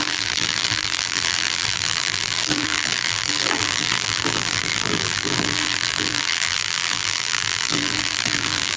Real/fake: fake